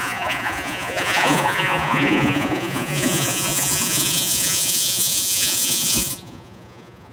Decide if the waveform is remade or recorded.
remade